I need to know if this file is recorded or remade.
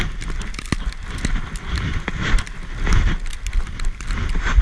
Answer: recorded